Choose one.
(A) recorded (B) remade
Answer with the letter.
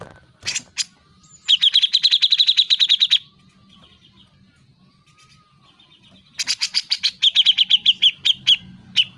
A